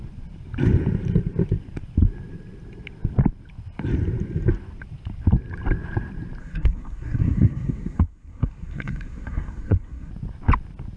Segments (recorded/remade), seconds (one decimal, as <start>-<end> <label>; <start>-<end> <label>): 0.0-6.4 recorded; 6.4-10.1 remade; 10.1-11.0 recorded